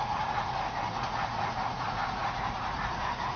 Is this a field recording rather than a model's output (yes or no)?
no